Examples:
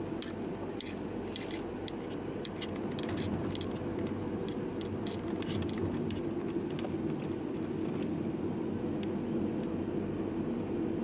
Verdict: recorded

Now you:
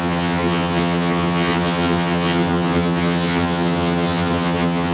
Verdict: remade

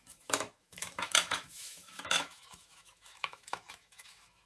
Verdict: remade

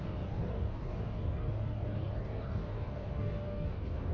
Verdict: remade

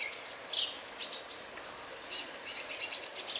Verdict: recorded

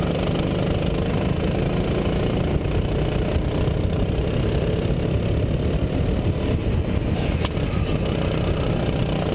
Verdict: recorded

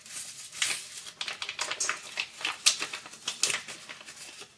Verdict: recorded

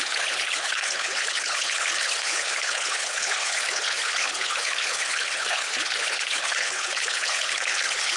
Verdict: remade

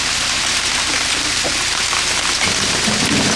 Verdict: recorded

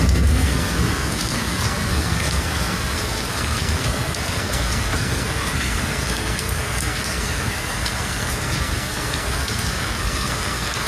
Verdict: remade